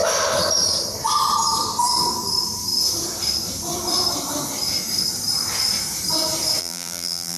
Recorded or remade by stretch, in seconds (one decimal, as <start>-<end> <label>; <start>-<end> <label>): 0.0-6.6 recorded; 6.6-7.4 remade